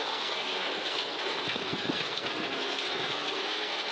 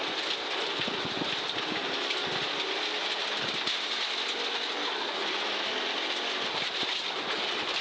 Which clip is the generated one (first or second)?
first